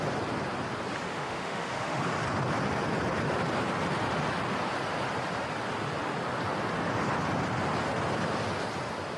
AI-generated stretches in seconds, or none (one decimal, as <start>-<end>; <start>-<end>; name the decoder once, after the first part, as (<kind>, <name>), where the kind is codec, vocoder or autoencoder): 1.1-2.0 (autoencoder, DAC-VAE)